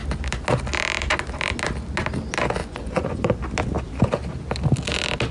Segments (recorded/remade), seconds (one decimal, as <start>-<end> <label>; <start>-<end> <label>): 0.0-2.6 recorded; 2.6-3.4 remade; 3.4-5.3 recorded